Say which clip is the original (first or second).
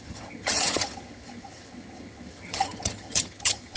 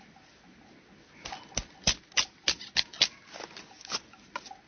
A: second